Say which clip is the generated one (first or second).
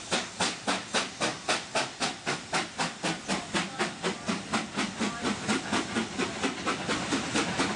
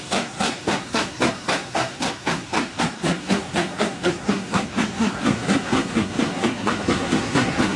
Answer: second